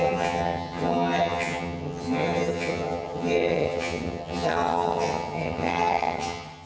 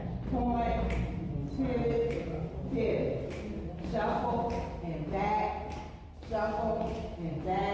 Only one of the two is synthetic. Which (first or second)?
first